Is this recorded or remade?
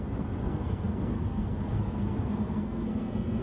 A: remade